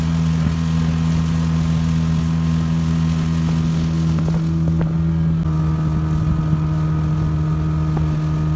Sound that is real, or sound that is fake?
real